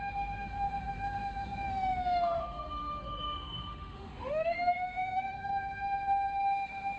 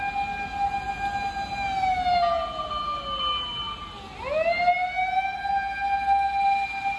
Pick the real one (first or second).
second